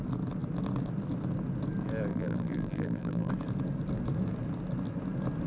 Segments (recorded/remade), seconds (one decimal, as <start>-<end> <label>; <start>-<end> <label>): 0.0-2.1 recorded; 2.1-3.3 remade; 3.3-5.5 recorded